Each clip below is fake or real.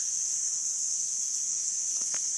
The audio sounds fake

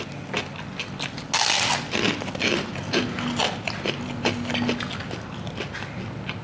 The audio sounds real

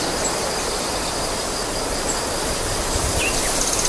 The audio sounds real